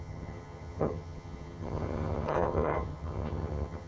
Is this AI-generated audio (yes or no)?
yes